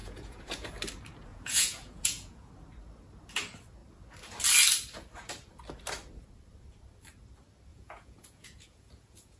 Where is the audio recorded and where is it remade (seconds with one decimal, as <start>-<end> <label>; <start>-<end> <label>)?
0.0-0.7 remade; 0.7-1.3 recorded; 1.3-2.5 remade; 2.5-7.7 recorded; 7.7-9.4 remade